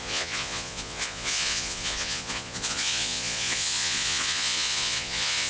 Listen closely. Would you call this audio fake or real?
fake